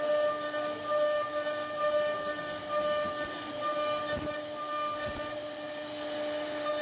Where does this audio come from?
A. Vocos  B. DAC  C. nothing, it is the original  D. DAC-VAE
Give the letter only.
C